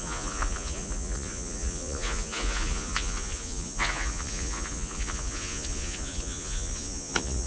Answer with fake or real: fake